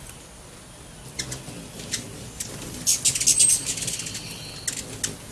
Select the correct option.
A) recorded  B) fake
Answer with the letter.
A